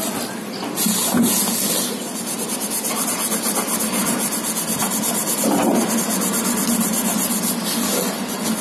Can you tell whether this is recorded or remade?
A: recorded